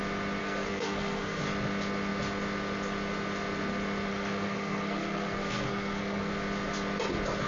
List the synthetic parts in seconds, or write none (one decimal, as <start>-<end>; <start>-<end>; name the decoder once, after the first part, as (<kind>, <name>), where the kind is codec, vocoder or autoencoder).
0.4-1.4 (codec, SNAC); 4.1-6.3